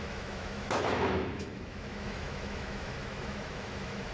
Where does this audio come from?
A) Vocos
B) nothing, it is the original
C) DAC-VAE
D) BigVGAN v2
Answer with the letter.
C